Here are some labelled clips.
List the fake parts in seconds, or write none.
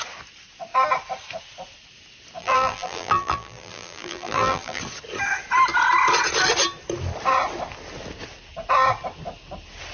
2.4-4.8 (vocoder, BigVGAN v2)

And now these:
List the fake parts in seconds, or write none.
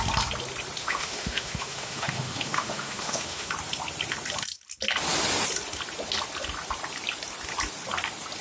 0.8-3.5 (autoencoder, DAC-VAE)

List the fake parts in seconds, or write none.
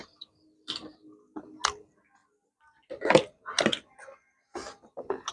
0.0-1.4 (vocoder, BigVGAN v2)